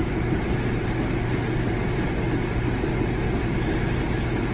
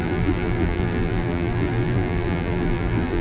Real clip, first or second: first